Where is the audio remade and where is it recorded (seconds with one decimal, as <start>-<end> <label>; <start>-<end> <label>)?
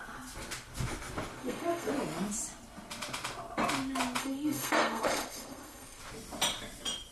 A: 0.0-1.4 recorded; 1.4-1.9 remade; 1.9-4.2 recorded; 4.2-6.0 remade; 6.0-7.1 recorded